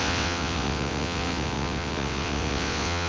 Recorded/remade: remade